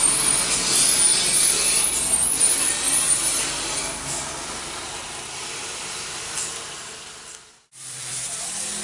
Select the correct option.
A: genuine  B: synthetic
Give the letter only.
A